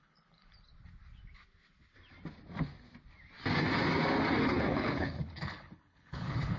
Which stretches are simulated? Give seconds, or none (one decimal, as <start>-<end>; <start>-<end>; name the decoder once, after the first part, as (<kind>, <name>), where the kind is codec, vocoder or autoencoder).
0.0-0.5 (codec, HILCodec); 4.5-6.6